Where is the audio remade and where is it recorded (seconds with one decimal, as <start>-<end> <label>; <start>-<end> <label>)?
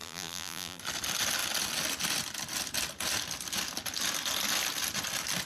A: 0.0-0.8 remade; 0.8-5.5 recorded